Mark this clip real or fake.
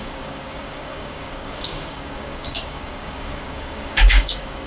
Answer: fake